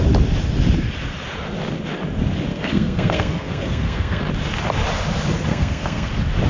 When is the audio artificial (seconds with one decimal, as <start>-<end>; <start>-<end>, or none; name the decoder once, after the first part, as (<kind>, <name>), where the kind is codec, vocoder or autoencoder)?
2.5-4.2 (codec, SNAC); 5.5-6.1